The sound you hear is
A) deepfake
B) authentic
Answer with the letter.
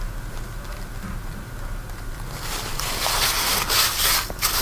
B